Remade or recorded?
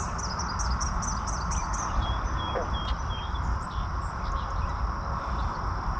recorded